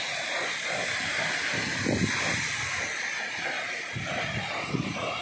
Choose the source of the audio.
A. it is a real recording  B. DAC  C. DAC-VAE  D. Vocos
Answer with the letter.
A